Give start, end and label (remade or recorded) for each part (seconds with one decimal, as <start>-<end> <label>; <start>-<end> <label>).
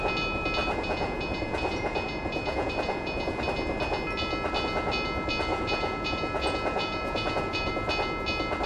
0.0-0.6 recorded; 0.6-3.4 remade; 3.4-5.5 recorded; 5.5-7.7 remade; 7.7-8.7 recorded